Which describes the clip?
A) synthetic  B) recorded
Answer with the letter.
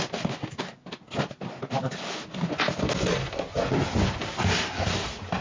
B